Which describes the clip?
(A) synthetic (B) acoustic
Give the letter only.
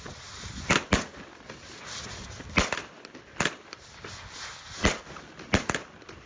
B